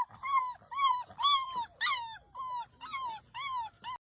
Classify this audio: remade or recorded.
recorded